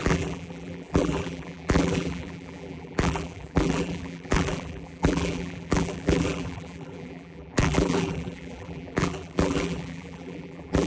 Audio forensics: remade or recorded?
remade